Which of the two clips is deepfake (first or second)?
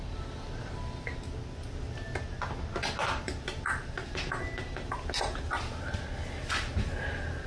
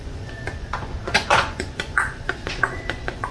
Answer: second